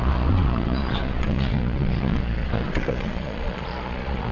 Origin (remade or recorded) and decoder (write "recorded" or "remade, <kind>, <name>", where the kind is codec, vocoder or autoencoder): remade, vocoder, Vocos